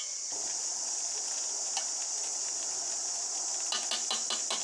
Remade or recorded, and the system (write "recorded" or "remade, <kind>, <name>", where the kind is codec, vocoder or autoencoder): recorded